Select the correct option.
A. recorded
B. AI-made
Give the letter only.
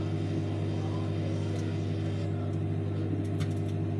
A